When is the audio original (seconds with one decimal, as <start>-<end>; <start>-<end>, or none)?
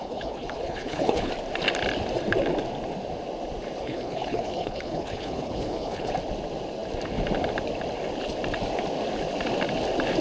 1.3-3.8; 6.1-10.2